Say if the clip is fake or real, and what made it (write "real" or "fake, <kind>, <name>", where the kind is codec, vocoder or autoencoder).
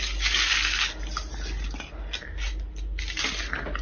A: real